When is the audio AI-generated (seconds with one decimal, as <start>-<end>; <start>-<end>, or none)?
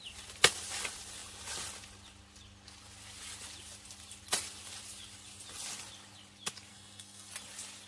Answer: 6.7-7.3